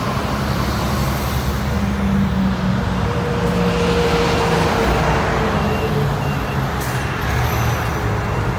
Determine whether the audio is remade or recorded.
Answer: recorded